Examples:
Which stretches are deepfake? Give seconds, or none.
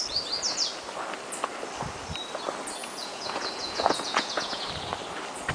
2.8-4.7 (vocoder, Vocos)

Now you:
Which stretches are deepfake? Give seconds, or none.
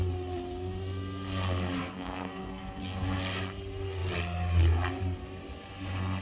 1.8-2.8 (codec, SNAC)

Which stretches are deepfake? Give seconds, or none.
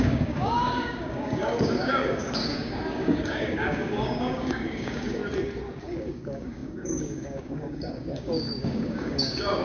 0.0-5.2 (codec, DAC); 5.8-9.6